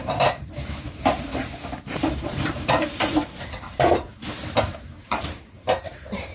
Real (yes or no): no